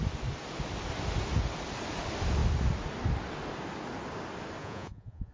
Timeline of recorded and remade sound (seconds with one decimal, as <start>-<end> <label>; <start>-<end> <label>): 0.0-4.6 recorded; 4.6-5.3 remade